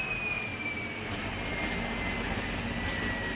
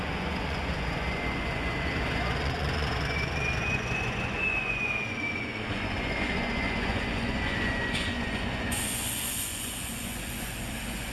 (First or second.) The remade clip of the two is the second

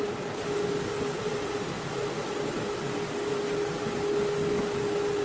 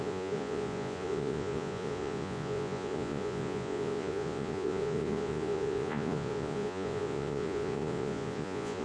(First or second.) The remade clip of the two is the second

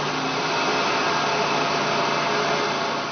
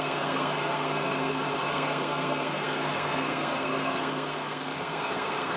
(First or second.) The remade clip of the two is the second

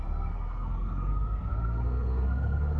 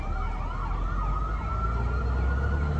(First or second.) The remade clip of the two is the first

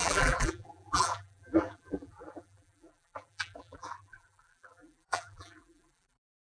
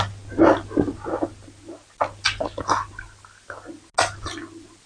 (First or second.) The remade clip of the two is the first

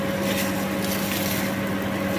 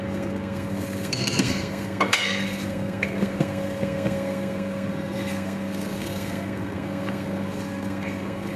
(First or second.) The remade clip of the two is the second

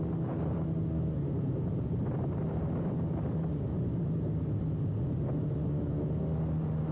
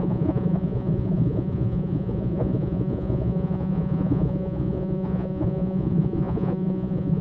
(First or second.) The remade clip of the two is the second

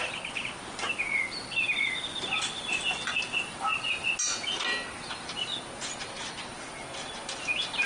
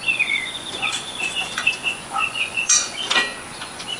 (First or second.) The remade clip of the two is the second